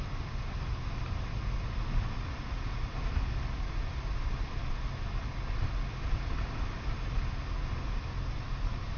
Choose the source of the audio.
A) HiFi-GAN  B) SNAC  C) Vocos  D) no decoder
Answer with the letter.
D